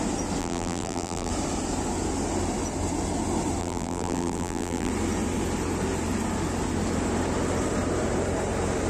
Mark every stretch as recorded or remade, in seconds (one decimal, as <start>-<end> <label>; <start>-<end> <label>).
0.0-0.4 recorded; 0.4-1.3 remade; 1.3-3.6 recorded; 3.6-4.9 remade; 4.9-8.9 recorded